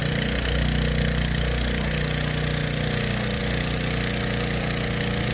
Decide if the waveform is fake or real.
real